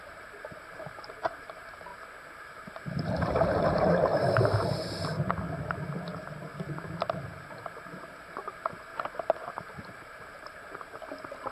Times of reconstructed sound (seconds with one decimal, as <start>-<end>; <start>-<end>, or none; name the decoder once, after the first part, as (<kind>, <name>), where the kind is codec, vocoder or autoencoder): 0.0-1.9 (vocoder, BigVGAN v2); 2.5-4.1; 8.1-11.5